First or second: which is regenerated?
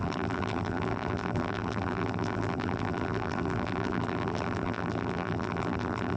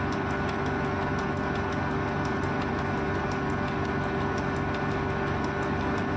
first